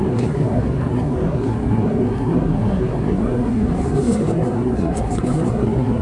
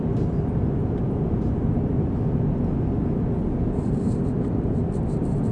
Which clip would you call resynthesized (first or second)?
first